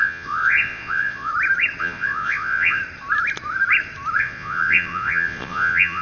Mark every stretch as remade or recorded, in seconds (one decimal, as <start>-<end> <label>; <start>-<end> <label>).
0.0-1.3 remade; 1.3-1.8 recorded; 1.8-2.8 remade; 2.8-4.2 recorded; 4.2-6.0 remade